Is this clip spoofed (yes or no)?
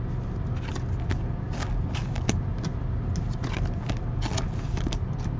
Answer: no